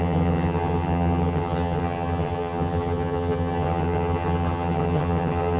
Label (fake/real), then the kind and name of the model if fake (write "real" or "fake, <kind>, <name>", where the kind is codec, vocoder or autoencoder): fake, vocoder, HiFi-GAN